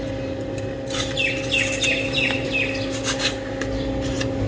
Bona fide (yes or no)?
yes